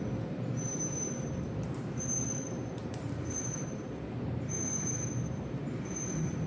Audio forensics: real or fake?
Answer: fake